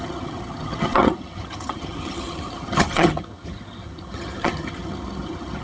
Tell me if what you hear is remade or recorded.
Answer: remade